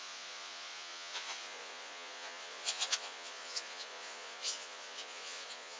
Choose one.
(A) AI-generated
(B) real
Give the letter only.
A